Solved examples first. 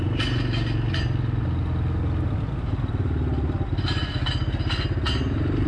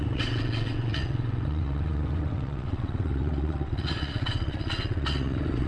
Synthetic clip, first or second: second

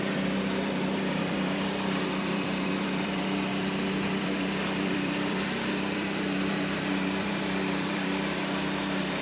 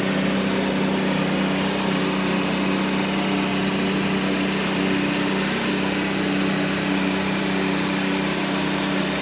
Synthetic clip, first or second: first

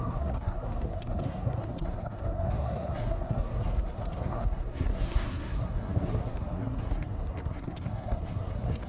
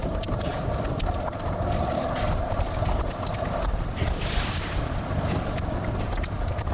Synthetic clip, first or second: first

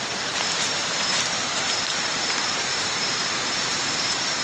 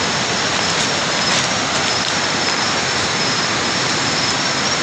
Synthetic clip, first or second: first